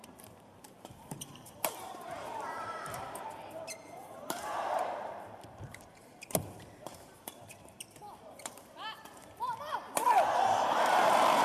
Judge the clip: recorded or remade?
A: remade